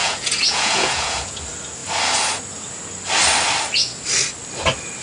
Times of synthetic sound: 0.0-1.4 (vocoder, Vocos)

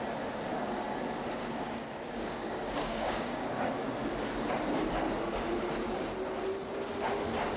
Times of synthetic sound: 1.4-3.7 (codec, DAC)

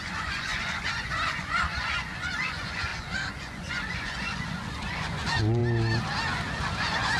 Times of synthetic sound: 0.0-5.6 (vocoder, Vocos); 6.8-7.2

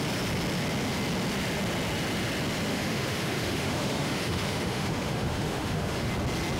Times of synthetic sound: 2.7-6.1 (autoencoder, DAC-VAE)

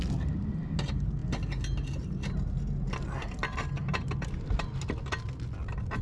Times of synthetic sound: none